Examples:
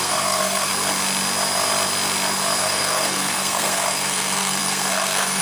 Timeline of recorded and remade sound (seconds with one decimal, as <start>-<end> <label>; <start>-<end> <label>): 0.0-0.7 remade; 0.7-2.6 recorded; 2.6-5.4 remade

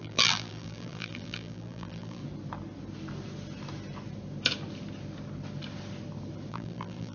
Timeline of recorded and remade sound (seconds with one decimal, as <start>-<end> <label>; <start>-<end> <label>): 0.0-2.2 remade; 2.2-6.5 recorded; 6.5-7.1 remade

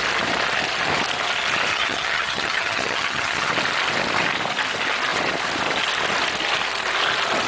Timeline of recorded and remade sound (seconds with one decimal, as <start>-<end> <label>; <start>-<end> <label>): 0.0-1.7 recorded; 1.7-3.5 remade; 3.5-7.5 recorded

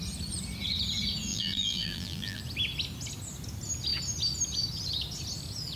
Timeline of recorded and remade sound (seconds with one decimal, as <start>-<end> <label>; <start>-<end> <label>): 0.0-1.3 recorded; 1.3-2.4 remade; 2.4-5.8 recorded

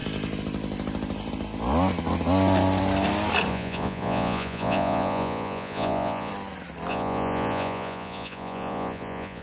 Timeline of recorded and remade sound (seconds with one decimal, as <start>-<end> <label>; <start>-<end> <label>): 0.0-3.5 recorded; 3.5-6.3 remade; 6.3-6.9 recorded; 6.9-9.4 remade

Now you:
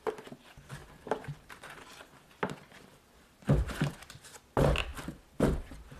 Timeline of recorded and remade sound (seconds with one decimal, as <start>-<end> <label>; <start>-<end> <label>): 0.0-0.8 recorded; 0.8-4.4 remade; 4.4-6.0 recorded